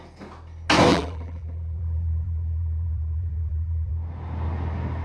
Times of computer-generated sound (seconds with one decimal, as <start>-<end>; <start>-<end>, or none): 0.9-3.9